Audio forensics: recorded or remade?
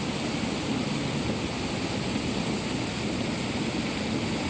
recorded